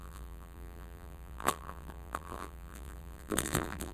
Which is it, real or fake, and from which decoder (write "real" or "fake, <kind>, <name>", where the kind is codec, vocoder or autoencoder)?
fake, vocoder, BigVGAN v2